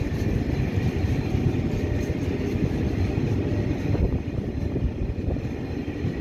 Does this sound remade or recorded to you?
recorded